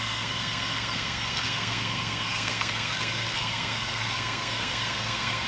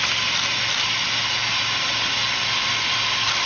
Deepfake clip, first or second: first